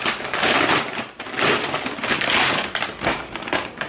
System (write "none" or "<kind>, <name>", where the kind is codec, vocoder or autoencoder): none